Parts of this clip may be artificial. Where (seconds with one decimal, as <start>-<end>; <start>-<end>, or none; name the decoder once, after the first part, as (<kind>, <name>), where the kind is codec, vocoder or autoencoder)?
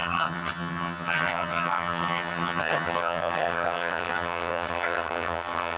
0.0-5.8 (vocoder, HiFi-GAN)